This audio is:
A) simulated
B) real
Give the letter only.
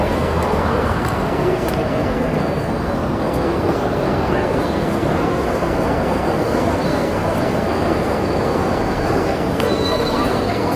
A